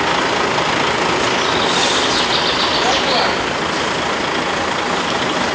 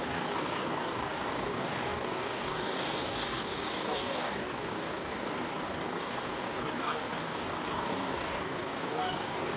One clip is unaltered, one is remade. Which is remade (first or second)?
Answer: second